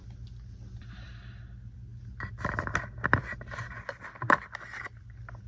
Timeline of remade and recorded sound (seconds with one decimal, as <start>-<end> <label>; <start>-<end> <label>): 0.0-5.5 recorded